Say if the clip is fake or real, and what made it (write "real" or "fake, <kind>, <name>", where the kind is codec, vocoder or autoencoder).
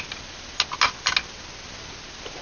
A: real